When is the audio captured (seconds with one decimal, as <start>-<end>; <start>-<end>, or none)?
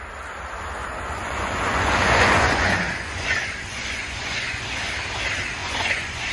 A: 0.0-0.8; 4.6-5.6